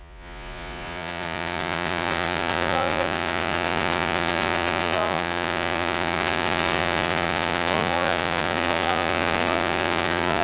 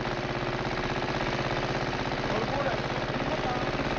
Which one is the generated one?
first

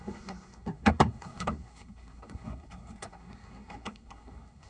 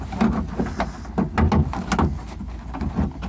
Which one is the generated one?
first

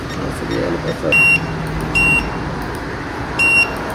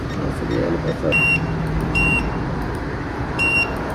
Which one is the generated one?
second